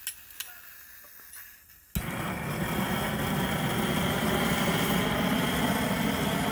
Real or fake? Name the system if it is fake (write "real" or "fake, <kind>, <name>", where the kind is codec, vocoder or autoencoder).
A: real